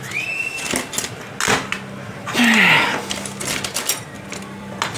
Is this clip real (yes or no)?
yes